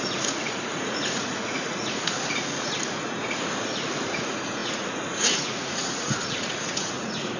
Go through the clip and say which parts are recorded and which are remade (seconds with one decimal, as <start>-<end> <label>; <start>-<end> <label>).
0.0-7.4 remade